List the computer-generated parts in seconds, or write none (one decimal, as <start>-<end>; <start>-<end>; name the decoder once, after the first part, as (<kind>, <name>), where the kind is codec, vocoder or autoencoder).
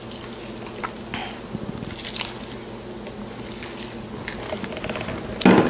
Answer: none